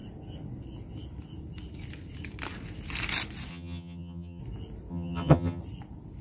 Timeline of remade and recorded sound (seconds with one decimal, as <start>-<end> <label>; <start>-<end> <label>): 0.0-3.5 recorded; 3.5-4.4 remade; 4.4-4.9 recorded; 4.9-5.6 remade; 5.6-6.2 recorded